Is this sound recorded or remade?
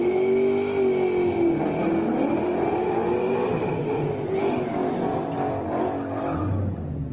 recorded